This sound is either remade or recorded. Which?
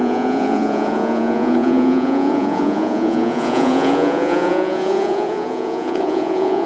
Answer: remade